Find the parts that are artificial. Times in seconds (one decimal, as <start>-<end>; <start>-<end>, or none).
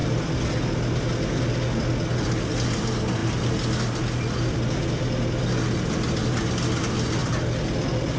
none